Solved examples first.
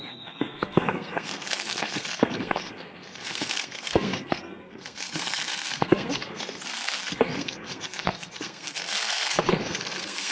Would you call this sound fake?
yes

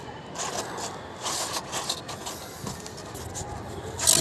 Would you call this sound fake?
no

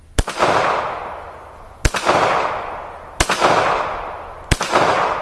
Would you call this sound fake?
no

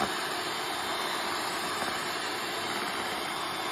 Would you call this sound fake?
no